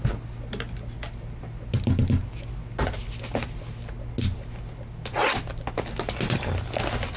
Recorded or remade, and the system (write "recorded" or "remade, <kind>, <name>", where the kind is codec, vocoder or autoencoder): recorded